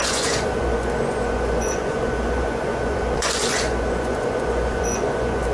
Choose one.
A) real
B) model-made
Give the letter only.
B